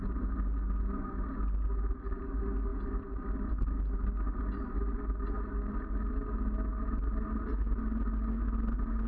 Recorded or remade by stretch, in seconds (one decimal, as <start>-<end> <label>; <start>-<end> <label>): 0.0-9.1 recorded